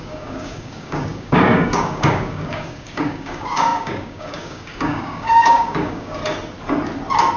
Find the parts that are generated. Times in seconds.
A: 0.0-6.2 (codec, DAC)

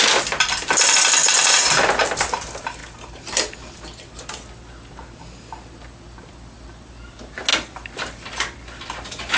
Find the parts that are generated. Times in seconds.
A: none

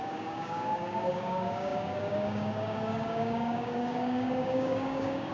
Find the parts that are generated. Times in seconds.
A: 0.0-5.3 (codec, DAC)